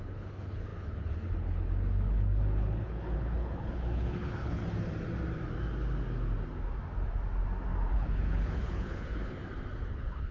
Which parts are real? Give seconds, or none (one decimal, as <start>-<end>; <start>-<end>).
4.6-7.9; 9.4-9.9